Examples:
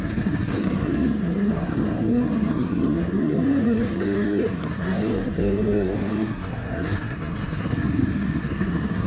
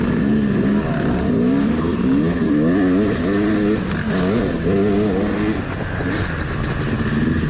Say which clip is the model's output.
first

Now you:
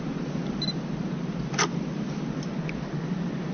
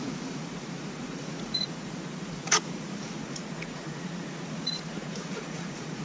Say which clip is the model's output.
second